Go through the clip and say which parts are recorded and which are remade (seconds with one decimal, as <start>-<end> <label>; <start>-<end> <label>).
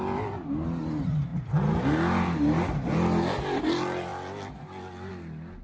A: 0.0-5.6 recorded